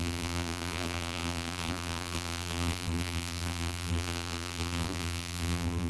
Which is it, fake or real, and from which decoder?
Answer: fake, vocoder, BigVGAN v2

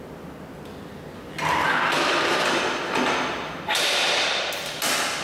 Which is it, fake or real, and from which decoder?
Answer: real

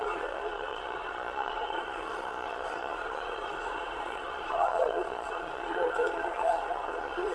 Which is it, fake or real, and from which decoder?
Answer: fake, vocoder, Vocos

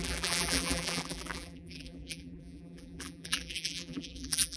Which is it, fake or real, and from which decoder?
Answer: fake, vocoder, BigVGAN v2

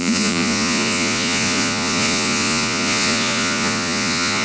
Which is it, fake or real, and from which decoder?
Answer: fake, vocoder, Vocos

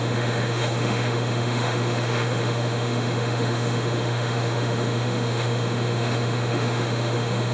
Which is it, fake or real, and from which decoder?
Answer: fake, autoencoder, DAC-VAE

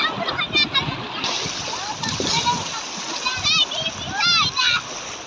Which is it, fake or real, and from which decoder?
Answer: real